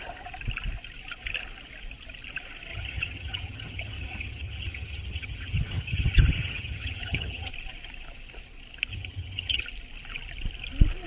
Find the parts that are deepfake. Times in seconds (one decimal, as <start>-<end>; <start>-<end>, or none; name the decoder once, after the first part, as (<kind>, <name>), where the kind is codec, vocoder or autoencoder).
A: 2.7-7.5 (vocoder, HiFi-GAN); 8.9-9.6